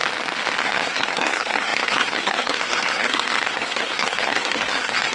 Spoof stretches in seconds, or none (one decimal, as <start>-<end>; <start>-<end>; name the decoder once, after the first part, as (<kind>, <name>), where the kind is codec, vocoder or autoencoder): 0.6-5.1 (codec, SNAC)